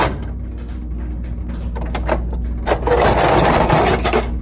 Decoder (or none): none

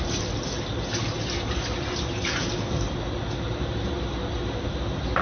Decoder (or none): none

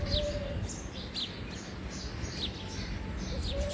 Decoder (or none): none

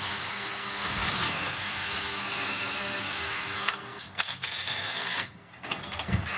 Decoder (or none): codec, SNAC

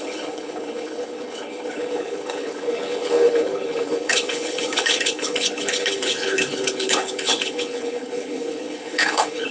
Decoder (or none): codec, HILCodec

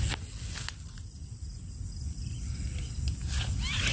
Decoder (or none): none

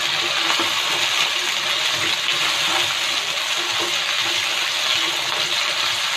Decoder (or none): none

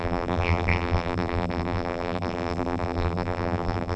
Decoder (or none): vocoder, BigVGAN v2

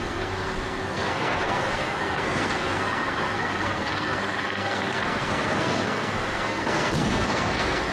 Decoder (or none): codec, SNAC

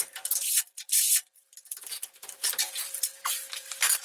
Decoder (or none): vocoder, BigVGAN v2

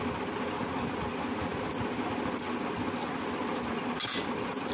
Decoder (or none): none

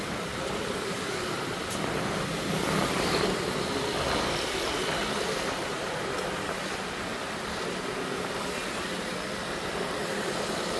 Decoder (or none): none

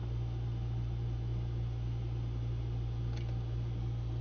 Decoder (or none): none